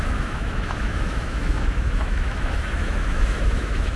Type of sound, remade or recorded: remade